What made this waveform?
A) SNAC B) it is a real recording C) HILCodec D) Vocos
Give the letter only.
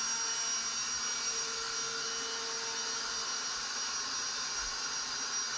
B